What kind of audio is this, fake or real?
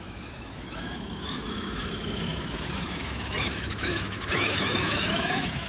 fake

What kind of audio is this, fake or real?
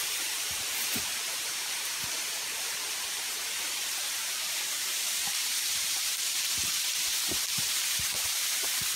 fake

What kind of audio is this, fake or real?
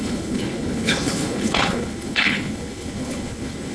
fake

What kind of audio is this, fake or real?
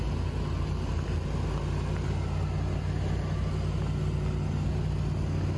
real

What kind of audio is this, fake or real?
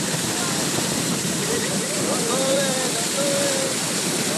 fake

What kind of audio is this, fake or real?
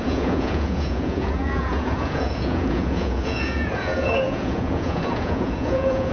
fake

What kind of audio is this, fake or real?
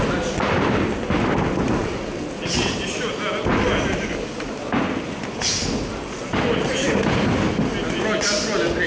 real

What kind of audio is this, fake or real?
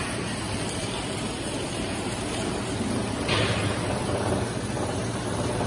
fake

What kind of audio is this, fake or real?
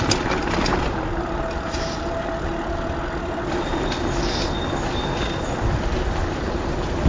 real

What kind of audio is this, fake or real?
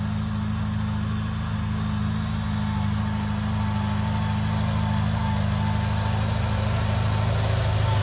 real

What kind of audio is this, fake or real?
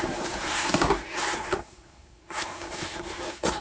fake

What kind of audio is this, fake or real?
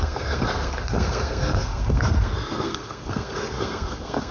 fake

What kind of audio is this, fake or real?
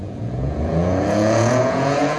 fake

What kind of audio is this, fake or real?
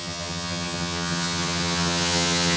fake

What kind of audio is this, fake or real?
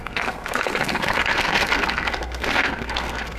fake